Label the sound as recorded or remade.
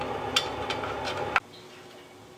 recorded